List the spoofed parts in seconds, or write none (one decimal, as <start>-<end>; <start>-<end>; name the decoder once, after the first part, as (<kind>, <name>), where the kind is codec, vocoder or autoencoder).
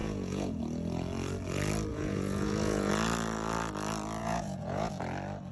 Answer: 0.0-0.6 (vocoder, Vocos); 1.9-2.9; 4.2-4.9